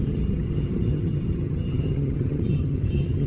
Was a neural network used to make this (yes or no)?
yes